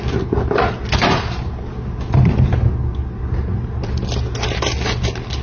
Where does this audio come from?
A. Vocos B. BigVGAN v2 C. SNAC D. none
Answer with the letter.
D